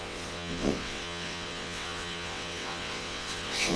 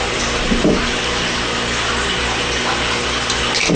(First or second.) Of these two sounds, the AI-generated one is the first